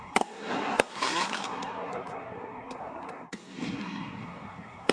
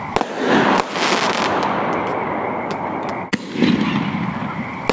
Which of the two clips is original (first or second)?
second